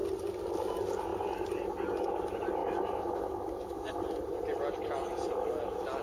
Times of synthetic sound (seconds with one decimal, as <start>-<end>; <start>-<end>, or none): 2.6-3.9